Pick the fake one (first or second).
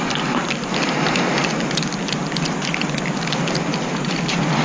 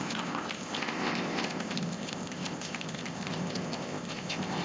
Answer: second